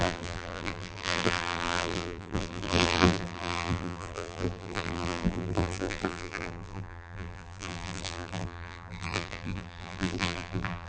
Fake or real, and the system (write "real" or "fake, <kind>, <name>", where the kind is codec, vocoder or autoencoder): fake, vocoder, BigVGAN v2